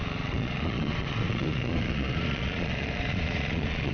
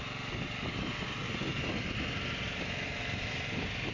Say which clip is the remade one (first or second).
first